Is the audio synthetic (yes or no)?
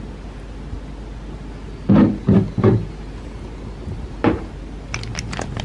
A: no